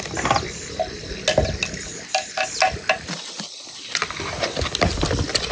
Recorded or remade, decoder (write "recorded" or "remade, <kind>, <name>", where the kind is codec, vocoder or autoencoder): recorded